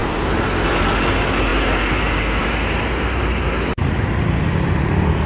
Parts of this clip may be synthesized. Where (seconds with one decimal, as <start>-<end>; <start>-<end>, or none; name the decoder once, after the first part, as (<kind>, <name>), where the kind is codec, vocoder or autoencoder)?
0.0-0.7 (vocoder, BigVGAN v2); 2.4-3.7